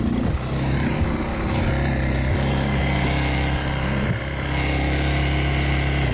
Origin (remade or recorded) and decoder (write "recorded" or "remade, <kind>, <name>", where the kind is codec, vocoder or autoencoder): recorded